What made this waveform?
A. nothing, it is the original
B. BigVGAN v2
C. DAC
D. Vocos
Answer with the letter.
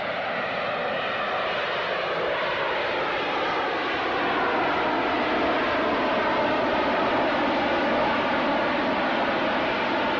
A